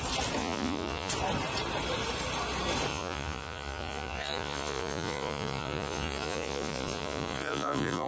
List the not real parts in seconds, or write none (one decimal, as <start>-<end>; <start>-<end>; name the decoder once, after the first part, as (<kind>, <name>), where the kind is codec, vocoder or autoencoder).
0.4-1.1 (vocoder, Vocos); 2.9-8.1